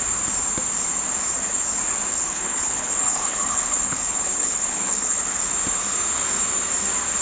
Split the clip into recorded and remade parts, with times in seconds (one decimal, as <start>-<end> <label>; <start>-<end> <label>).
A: 0.0-2.1 recorded; 2.1-5.4 remade; 5.4-7.2 recorded